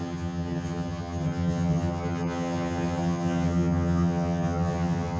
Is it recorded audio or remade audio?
remade